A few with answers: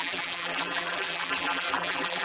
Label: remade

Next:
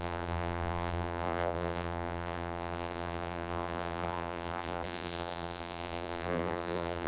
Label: remade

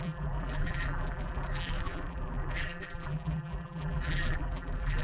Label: remade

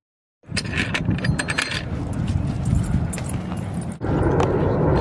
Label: recorded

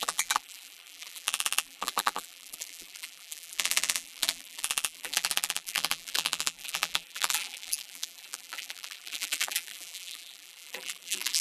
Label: remade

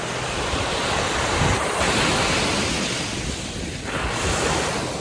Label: recorded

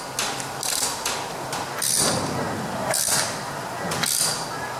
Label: recorded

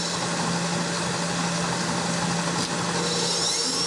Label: recorded